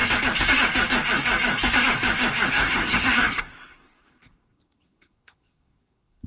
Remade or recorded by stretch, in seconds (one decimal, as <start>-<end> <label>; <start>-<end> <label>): 0.0-2.5 recorded; 2.5-6.3 remade

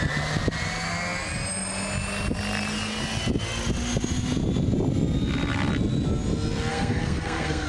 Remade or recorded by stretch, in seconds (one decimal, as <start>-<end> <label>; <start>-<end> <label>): 0.0-6.7 recorded; 6.7-7.7 remade